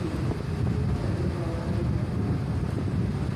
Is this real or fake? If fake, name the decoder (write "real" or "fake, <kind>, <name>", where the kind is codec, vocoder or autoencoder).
real